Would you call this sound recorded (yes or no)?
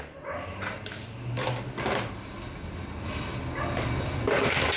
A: yes